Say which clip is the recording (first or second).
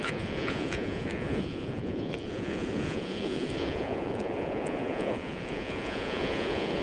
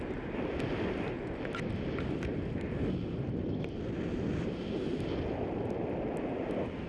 second